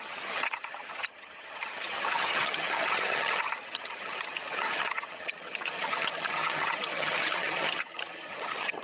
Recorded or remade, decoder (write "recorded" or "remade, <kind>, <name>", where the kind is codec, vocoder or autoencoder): remade, vocoder, HiFi-GAN